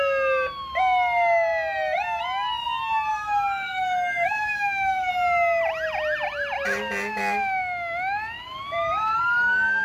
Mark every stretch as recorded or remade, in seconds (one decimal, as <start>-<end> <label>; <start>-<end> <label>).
0.0-3.1 recorded; 3.1-5.1 remade; 5.1-9.8 recorded